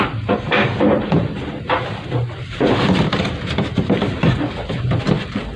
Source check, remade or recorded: remade